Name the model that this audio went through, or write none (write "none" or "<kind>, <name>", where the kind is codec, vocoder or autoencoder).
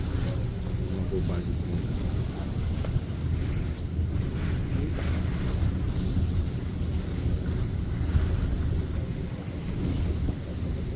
none